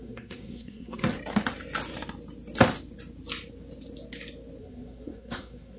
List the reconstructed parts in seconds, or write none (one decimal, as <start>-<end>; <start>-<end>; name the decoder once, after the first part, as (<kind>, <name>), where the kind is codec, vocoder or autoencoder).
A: 0.0-1.1 (codec, SNAC); 4.6-5.8